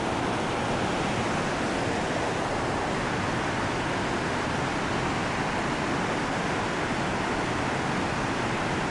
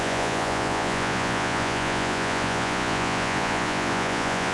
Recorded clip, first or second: first